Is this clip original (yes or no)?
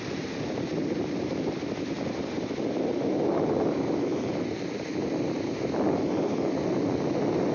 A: yes